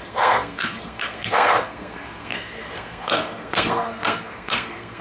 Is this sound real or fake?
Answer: fake